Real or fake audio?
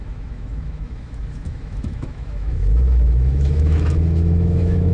fake